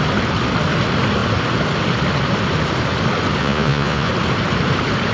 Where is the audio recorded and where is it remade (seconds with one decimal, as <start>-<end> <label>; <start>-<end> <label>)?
0.0-3.4 recorded; 3.4-4.1 remade; 4.1-5.1 recorded

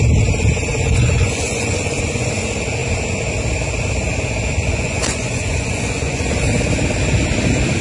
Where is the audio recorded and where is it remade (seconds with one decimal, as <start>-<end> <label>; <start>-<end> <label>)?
0.0-0.7 recorded; 0.7-2.3 remade; 2.3-4.6 recorded; 4.6-6.3 remade; 6.3-7.8 recorded

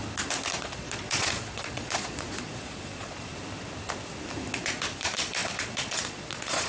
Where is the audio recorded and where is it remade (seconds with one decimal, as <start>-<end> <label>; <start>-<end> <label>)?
0.0-0.6 recorded; 0.6-3.3 remade; 3.3-4.6 recorded; 4.6-6.7 remade

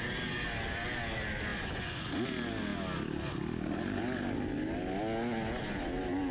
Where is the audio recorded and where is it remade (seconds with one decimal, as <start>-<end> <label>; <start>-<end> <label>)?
0.0-1.5 recorded; 1.5-2.1 remade; 2.1-6.3 recorded